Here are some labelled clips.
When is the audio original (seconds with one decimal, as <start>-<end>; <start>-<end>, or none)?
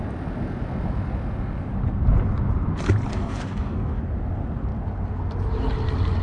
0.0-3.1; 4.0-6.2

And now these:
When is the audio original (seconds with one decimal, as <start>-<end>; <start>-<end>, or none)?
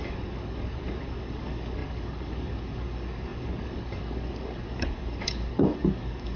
none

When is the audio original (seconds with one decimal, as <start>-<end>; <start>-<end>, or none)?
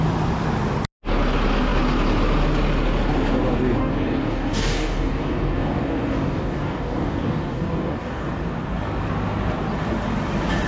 0.0-3.8; 8.3-10.7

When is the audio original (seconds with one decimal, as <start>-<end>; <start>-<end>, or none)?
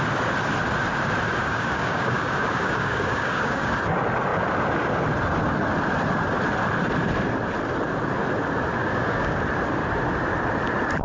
0.0-1.4; 3.7-8.8; 9.4-11.0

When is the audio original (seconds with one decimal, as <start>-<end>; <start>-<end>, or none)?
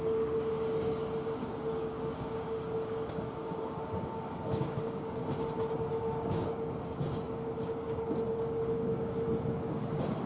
5.2-5.7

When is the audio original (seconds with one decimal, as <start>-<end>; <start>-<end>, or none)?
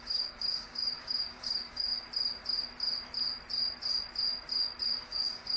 1.9-4.8